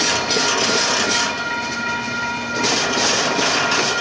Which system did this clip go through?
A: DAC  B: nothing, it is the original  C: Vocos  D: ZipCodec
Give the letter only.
B